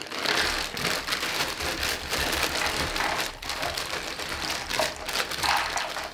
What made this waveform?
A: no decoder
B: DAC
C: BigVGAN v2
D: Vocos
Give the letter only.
C